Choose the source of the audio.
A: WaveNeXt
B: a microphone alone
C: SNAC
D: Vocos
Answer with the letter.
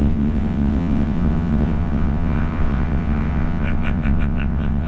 A